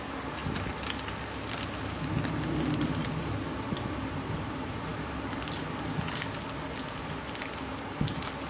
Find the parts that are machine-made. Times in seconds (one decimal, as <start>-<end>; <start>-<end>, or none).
none